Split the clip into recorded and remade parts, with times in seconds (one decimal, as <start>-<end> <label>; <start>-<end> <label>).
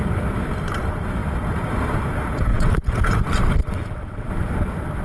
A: 0.0-2.5 recorded; 2.5-3.1 remade; 3.1-3.6 recorded; 3.6-4.3 remade; 4.3-5.0 recorded